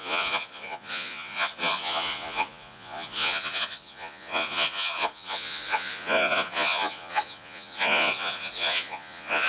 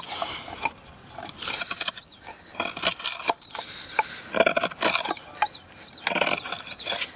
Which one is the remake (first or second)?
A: first